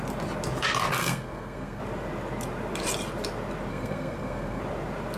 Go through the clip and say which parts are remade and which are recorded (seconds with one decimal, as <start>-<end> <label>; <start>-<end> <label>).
0.0-1.0 recorded; 1.0-1.8 remade; 1.8-3.7 recorded; 3.7-4.6 remade; 4.6-5.2 recorded